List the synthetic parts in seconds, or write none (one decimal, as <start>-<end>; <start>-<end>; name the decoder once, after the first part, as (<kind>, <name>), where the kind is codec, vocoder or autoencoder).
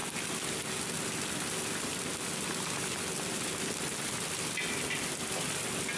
none